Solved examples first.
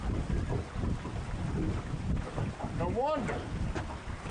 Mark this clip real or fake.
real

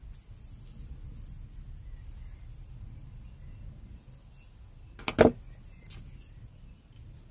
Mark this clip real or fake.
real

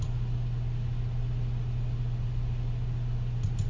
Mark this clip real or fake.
real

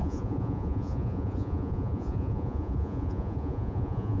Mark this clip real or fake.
fake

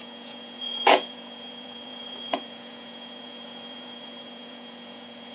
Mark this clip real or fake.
fake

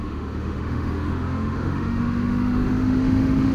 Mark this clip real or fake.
fake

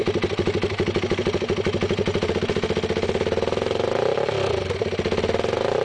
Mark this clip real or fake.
real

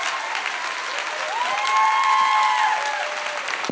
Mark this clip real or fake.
real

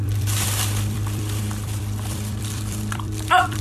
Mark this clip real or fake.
fake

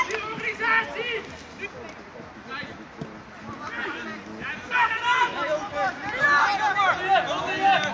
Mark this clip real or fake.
real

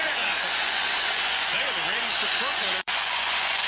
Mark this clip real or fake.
fake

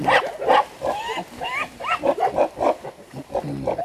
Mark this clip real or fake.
real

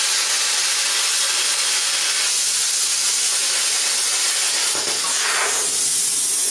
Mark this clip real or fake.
real